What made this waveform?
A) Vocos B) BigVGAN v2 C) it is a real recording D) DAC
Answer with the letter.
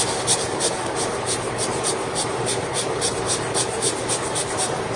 B